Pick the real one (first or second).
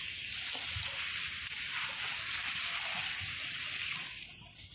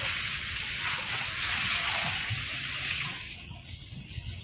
first